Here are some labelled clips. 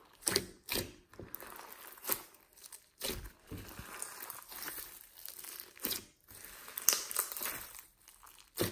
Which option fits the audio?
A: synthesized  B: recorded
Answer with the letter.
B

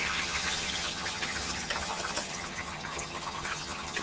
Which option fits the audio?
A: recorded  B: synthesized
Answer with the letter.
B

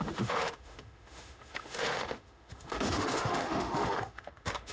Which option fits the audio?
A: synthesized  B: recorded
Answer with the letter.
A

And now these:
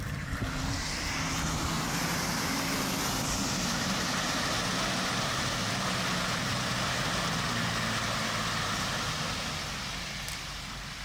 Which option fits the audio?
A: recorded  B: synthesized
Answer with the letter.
A